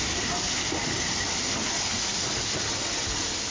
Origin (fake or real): real